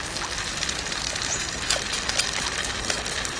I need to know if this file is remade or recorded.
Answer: recorded